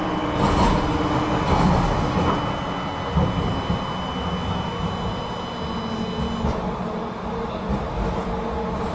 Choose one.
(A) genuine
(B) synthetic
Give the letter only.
A